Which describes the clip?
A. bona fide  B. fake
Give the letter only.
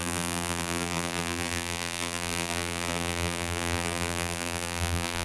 B